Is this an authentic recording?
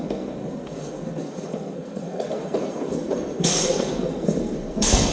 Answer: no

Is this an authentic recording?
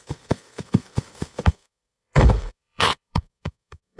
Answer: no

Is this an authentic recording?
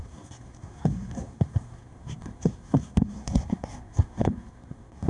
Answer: no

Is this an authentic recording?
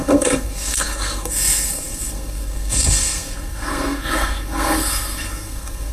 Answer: no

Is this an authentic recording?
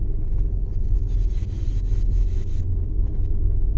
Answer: yes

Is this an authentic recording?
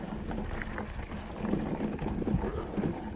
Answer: yes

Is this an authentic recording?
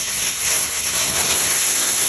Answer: no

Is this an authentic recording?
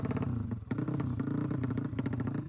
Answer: yes